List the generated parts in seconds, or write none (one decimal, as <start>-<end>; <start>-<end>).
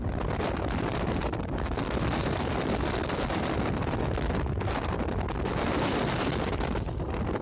1.2-4.0